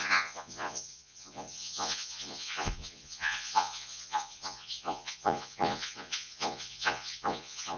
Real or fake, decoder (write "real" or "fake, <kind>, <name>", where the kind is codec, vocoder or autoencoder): fake, vocoder, Vocos